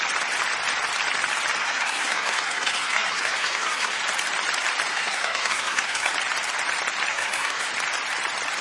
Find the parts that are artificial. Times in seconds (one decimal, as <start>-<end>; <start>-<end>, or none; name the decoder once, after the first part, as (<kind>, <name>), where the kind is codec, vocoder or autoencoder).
1.6-4.0 (codec, SNAC); 4.9-6.1; 7.1-7.7